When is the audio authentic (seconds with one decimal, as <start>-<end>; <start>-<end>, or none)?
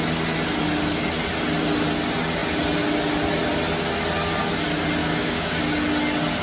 0.0-5.0; 5.6-6.4